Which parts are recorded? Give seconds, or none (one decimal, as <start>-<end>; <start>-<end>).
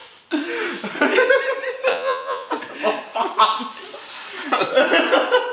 0.0-1.9; 2.5-5.5